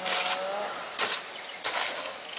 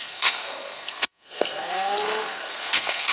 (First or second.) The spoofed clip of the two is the second